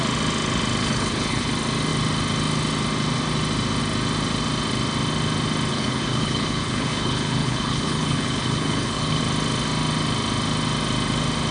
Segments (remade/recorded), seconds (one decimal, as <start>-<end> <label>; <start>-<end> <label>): 0.0-0.8 recorded; 0.8-1.5 remade; 1.5-5.7 recorded; 5.7-9.2 remade; 9.2-11.5 recorded